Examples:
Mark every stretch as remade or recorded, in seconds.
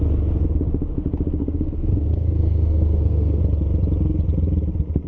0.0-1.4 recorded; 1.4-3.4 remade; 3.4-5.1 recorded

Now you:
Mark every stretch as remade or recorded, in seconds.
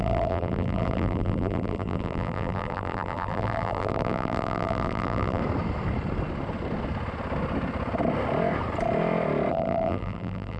0.0-5.4 remade; 5.4-9.5 recorded; 9.5-10.6 remade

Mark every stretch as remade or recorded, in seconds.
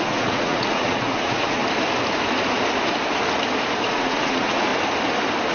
0.0-1.6 remade; 1.6-3.9 recorded; 3.9-4.7 remade; 4.7-5.5 recorded